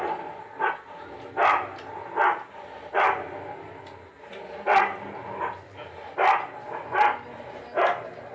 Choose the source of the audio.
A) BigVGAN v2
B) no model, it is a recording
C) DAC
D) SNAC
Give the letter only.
B